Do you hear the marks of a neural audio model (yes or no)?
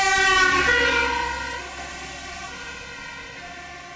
no